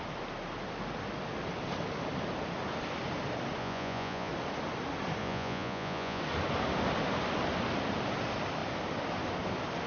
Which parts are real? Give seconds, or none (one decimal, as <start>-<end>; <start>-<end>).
0.0-3.6; 4.3-5.2; 6.2-9.9